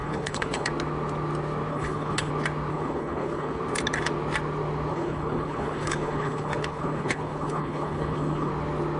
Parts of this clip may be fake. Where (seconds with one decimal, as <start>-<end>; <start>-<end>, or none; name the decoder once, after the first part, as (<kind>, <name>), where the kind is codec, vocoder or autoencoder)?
0.0-0.7 (codec, HILCodec); 1.7-2.3; 2.7-3.6; 4.9-8.5